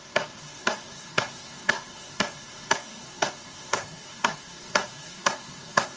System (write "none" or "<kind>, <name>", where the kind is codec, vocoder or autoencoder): codec, SNAC